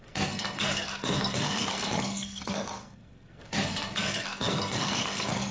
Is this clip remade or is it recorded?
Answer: remade